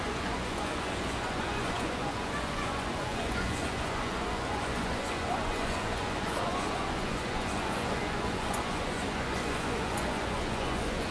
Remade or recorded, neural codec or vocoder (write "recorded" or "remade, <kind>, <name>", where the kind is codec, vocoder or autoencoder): remade, vocoder, Vocos